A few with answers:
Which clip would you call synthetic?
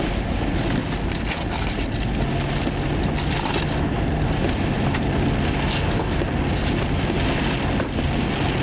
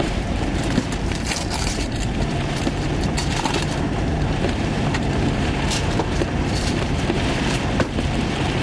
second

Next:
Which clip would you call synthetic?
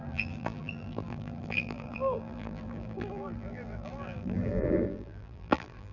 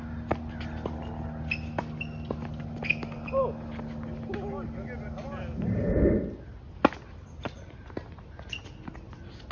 first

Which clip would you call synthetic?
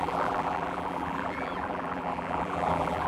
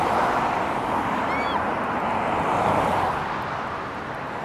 first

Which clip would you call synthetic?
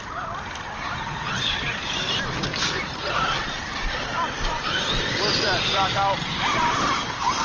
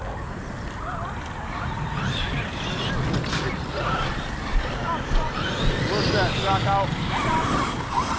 first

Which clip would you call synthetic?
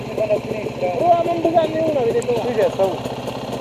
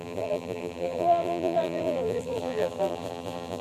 second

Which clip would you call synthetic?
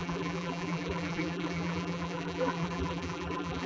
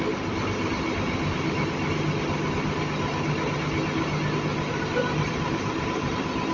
first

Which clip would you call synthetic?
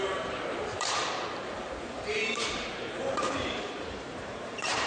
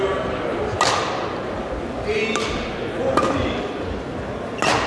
first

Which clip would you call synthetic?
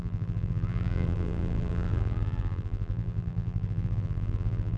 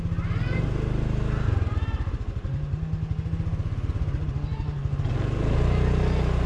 first